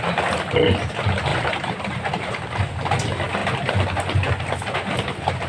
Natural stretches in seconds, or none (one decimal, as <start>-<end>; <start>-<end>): 0.0-1.3; 2.2-5.5